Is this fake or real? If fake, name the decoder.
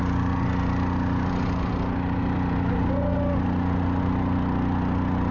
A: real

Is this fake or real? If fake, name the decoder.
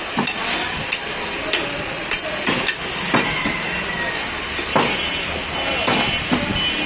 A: real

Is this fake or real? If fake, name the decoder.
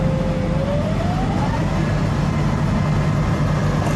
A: real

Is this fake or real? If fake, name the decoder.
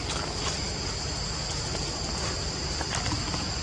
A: real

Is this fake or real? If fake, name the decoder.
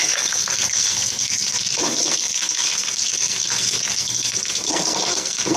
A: fake, codec, SNAC